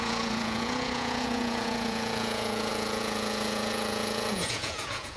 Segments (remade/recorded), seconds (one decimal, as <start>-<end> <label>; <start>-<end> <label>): 0.0-5.2 remade